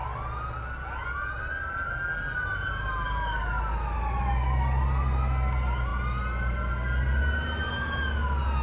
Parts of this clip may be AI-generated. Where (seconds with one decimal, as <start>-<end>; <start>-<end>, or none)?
none